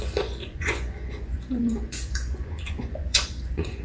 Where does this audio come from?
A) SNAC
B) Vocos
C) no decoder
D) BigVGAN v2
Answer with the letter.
B